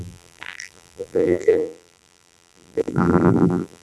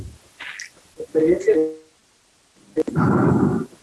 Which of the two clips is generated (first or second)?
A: first